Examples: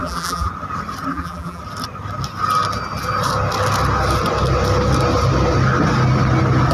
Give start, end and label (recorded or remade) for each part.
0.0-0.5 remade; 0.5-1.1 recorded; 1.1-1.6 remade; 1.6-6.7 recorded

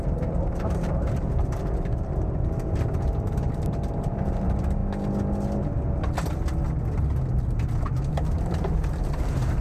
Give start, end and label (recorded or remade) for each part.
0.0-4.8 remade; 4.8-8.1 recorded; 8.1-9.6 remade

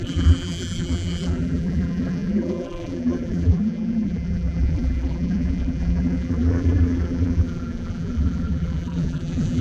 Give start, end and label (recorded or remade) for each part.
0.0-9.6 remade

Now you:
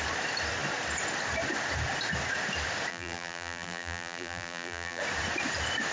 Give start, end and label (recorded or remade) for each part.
0.0-2.9 recorded; 2.9-5.0 remade; 5.0-5.9 recorded

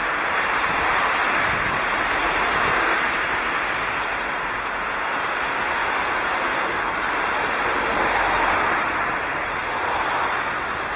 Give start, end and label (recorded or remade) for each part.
0.0-3.4 remade; 3.4-5.8 recorded; 5.8-8.0 remade; 8.0-11.0 recorded

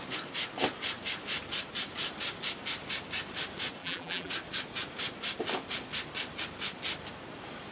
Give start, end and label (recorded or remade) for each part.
0.0-3.8 recorded; 3.8-4.3 remade; 4.3-7.7 recorded